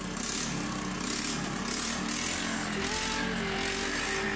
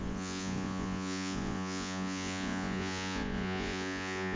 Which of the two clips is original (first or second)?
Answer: first